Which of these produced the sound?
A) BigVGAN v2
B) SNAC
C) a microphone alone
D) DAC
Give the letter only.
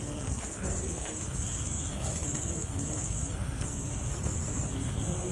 B